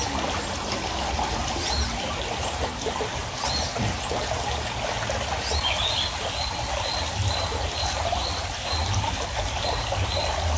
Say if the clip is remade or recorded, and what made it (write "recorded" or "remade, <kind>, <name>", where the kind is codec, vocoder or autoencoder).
recorded